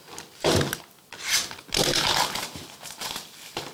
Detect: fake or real real